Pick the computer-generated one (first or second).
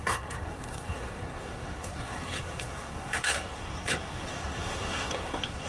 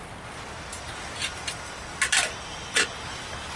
first